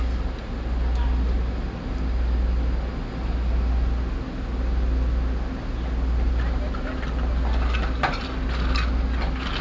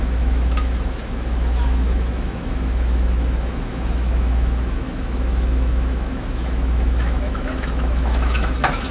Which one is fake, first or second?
second